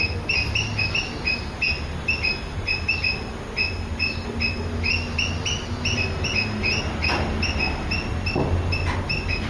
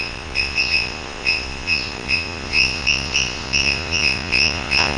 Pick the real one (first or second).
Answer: first